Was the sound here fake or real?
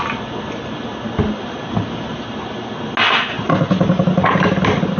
real